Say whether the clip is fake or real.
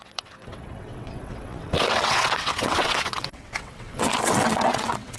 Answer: fake